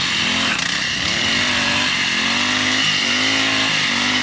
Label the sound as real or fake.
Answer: real